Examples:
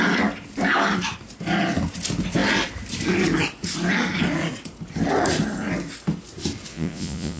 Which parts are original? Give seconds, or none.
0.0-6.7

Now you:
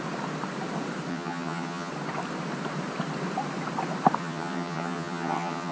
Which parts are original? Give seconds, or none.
0.0-1.1; 1.9-4.2

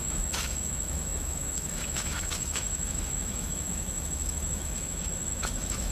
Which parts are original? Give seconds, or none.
none

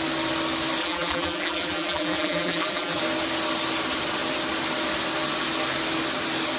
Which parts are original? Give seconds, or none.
0.0-0.8; 3.0-6.6

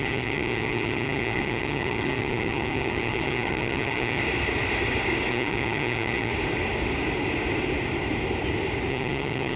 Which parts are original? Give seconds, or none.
4.2-5.3; 6.3-8.9

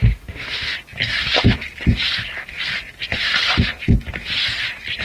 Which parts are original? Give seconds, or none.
0.7-5.0

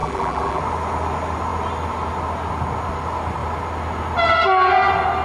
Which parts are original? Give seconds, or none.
0.6-5.2

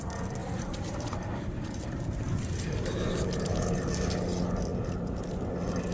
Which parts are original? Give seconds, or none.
0.0-0.4; 3.9-5.9